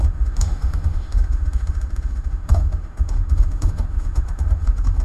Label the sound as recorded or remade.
remade